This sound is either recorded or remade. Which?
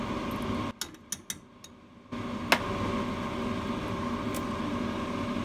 recorded